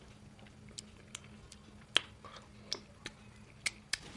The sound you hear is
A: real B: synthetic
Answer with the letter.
A